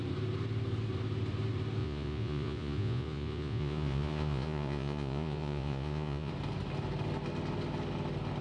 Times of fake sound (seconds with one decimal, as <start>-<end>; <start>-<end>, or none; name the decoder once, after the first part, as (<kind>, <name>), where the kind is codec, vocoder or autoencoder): 1.8-6.3 (vocoder, Vocos)